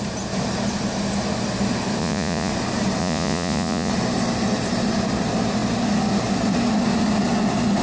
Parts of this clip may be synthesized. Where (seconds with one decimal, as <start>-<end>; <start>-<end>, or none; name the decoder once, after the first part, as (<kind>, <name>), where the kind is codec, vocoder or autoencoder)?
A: 2.0-2.5 (vocoder, Vocos); 3.0-3.9